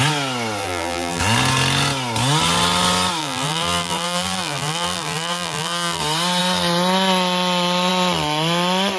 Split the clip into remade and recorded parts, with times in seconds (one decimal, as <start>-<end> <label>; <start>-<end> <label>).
0.0-0.6 recorded; 0.6-1.2 remade; 1.2-3.2 recorded; 3.2-6.0 remade; 6.0-9.0 recorded